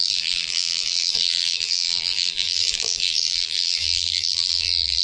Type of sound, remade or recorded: remade